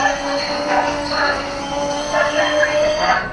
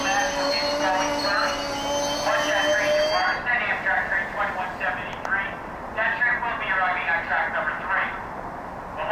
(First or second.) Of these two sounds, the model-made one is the first